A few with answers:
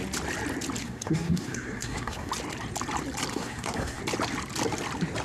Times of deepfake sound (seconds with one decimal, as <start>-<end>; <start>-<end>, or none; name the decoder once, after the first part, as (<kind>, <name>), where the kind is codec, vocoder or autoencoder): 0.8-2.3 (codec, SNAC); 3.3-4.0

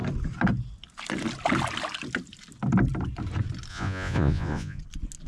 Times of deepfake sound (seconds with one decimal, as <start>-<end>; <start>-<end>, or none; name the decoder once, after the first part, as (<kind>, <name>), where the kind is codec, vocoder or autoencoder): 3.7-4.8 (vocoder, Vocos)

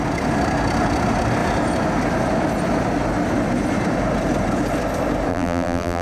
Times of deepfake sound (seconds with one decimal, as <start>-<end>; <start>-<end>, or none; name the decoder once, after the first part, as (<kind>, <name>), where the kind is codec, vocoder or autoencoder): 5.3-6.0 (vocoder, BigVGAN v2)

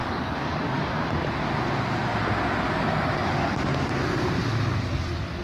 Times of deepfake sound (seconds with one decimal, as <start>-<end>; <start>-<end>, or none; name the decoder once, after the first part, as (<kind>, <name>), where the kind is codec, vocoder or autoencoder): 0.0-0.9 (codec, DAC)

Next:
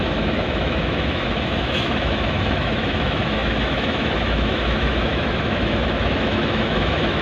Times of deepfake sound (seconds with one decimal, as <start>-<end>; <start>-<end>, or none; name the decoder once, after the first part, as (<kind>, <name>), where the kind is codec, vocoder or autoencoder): 0.0-7.2 (autoencoder, DAC-VAE)